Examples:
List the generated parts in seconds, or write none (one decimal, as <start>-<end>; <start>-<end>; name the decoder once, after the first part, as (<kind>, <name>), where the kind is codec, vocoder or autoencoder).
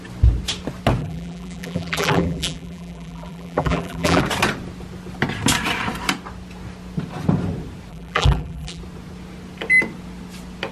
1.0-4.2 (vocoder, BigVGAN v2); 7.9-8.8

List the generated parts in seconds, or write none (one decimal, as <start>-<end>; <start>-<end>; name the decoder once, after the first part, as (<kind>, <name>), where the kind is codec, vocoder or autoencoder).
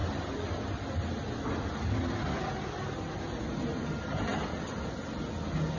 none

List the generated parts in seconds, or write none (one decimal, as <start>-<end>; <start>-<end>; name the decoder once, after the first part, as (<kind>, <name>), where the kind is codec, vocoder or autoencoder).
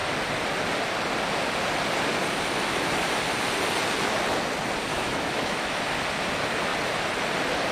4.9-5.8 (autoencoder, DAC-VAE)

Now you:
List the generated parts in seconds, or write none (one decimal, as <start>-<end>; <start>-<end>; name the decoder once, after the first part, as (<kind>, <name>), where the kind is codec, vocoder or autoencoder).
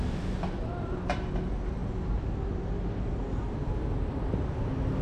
none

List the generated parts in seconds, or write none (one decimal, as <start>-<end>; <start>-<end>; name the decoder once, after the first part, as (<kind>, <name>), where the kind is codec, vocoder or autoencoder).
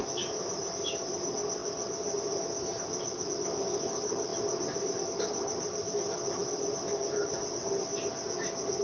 none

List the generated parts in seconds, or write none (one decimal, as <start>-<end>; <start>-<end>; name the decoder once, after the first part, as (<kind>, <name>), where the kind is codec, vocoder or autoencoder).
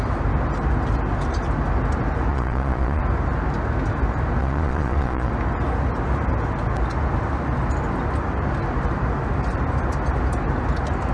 2.3-3.0 (vocoder, Vocos); 4.4-5.3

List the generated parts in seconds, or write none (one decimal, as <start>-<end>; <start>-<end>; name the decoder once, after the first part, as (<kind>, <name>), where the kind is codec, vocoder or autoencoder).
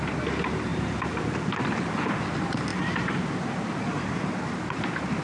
0.7-2.2 (vocoder, BigVGAN v2); 2.7-4.4